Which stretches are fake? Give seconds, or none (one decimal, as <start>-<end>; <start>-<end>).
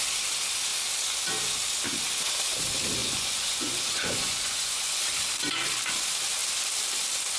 3.0-5.0